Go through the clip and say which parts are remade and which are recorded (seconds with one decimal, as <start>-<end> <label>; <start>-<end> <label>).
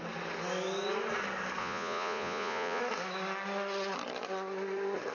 0.0-1.6 recorded; 1.6-2.8 remade; 2.8-5.1 recorded